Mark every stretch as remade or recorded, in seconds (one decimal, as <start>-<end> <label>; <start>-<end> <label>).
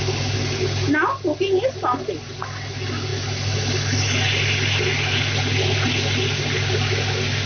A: 0.0-7.5 recorded